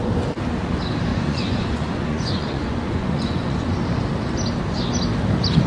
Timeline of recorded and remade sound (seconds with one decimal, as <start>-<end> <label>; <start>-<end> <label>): 0.0-1.1 recorded; 1.1-3.7 remade; 3.7-5.7 recorded